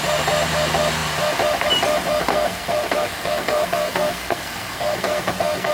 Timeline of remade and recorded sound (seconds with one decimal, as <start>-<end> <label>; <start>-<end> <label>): 0.0-2.3 recorded; 2.3-5.7 remade